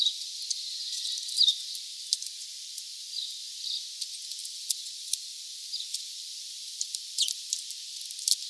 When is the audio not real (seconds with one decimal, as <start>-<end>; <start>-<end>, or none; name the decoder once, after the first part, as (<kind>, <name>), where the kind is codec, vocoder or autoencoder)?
1.5-3.5 (vocoder, BigVGAN v2); 4.4-7.7